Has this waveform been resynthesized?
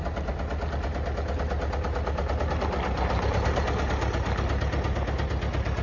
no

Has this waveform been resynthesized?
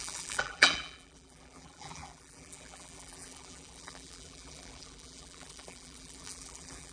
yes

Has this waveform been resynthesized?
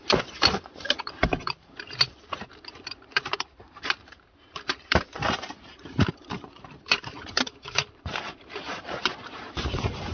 yes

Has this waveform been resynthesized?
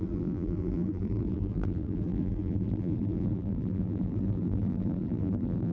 yes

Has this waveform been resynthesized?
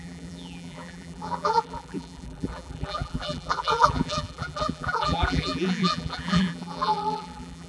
yes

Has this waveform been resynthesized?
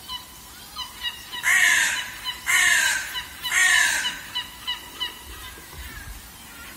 yes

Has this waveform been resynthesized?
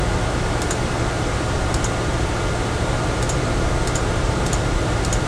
yes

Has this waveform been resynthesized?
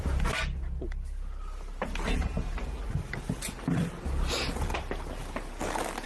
no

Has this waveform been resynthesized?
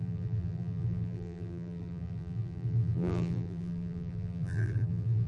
yes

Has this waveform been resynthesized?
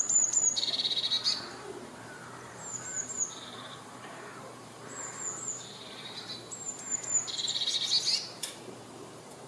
yes